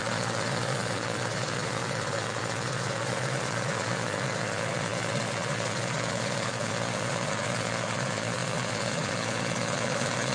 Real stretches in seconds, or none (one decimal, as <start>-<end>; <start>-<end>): none